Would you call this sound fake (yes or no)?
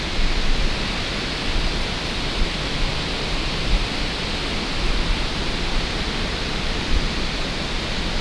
no